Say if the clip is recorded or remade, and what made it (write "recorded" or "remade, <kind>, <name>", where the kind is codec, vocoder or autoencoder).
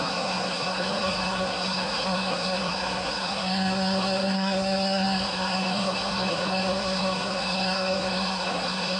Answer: remade, codec, SNAC